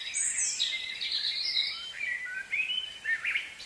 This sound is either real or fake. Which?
fake